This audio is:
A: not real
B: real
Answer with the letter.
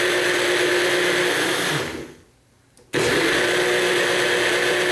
B